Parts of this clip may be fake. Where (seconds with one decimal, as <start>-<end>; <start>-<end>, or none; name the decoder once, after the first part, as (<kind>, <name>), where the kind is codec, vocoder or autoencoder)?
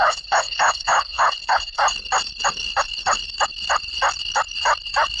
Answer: 0.0-1.8 (codec, HILCodec)